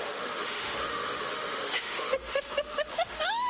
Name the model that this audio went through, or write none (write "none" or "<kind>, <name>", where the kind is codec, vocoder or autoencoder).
autoencoder, DAC-VAE